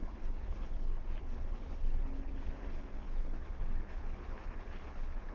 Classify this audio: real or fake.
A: fake